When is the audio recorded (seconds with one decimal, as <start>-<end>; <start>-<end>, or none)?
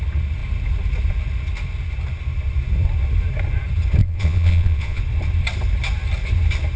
0.0-4.0; 5.0-6.8